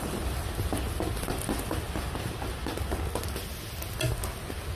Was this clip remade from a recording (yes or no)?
no